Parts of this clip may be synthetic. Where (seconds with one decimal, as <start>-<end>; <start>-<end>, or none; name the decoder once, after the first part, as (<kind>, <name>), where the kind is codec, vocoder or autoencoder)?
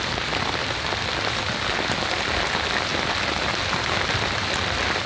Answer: none